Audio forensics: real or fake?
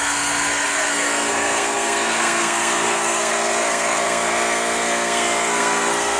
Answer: fake